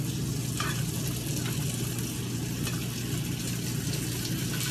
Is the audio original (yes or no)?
yes